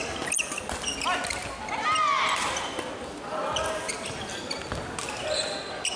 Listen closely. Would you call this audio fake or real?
real